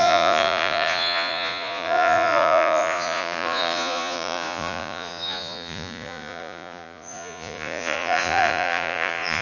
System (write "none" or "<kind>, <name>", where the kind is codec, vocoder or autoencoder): vocoder, Vocos